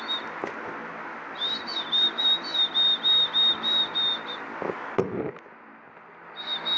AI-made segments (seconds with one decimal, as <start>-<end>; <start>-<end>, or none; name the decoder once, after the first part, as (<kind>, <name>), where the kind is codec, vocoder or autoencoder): none